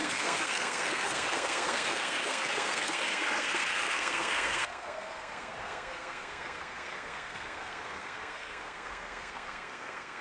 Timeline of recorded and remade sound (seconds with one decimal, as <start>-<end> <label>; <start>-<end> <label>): 0.0-10.2 remade